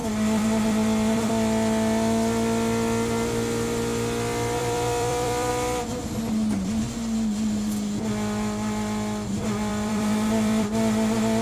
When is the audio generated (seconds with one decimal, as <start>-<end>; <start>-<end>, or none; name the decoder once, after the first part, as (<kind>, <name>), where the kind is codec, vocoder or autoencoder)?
0.0-1.3 (vocoder, BigVGAN v2); 4.6-5.5; 9.7-10.7